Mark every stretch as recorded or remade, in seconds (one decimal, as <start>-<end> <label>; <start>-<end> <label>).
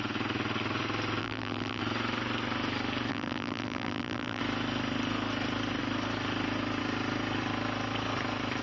0.0-1.2 recorded; 1.2-1.8 remade; 1.8-3.1 recorded; 3.1-4.4 remade; 4.4-8.6 recorded